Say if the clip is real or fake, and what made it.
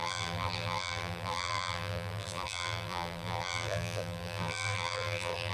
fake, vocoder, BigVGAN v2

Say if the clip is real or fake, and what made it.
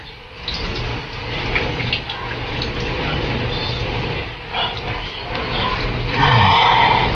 real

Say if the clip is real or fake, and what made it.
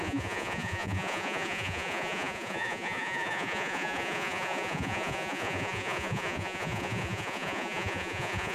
fake, vocoder, Vocos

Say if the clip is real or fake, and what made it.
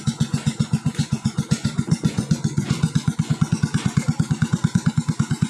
fake, vocoder, Vocos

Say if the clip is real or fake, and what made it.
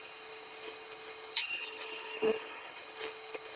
fake, codec, HILCodec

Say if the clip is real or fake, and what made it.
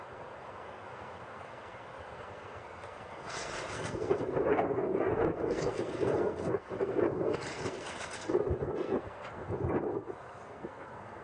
fake, codec, SNAC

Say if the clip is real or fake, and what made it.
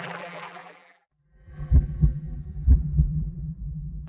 fake, vocoder, BigVGAN v2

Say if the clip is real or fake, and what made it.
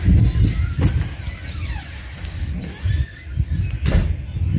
real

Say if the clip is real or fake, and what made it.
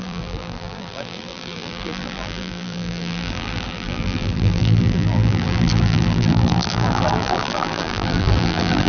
fake, vocoder, BigVGAN v2